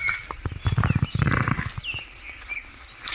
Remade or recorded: recorded